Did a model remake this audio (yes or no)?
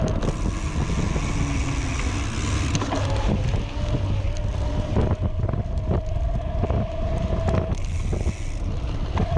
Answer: no